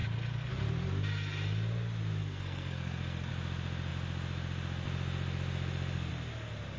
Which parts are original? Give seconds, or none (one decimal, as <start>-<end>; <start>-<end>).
0.0-2.2; 3.3-6.8